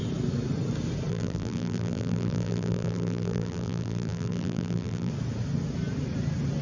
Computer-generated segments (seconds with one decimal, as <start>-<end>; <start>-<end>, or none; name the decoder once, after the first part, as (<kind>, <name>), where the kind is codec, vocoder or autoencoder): 1.1-5.1 (vocoder, BigVGAN v2)